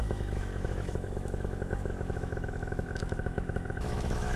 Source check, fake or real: fake